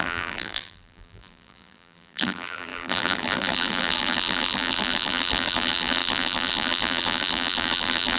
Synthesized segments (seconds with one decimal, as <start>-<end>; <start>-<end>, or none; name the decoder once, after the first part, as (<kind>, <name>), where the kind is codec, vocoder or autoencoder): 0.0-8.2 (vocoder, BigVGAN v2)